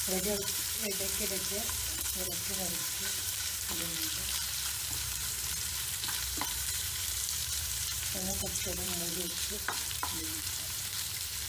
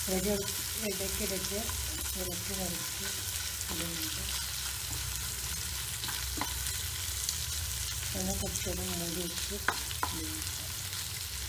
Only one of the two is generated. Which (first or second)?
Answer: first